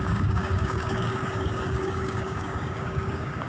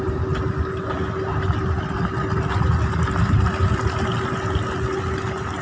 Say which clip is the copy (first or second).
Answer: first